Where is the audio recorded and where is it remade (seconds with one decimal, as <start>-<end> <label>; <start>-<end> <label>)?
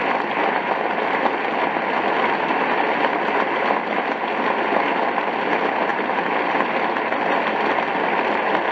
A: 0.0-8.7 recorded